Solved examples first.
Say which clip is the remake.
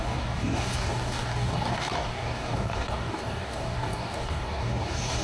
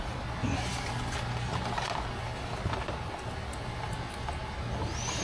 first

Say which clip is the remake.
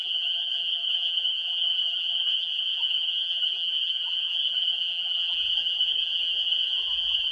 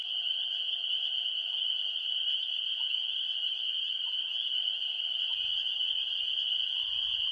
first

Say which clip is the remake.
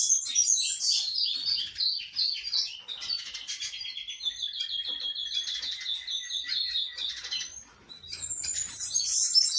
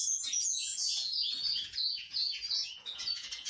second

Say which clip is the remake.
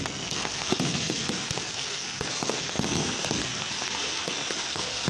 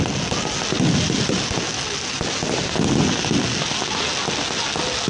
first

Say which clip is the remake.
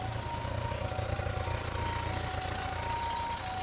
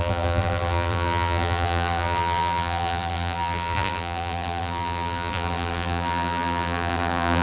second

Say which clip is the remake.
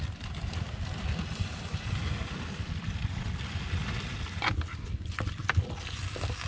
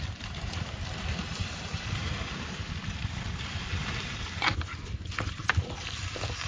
second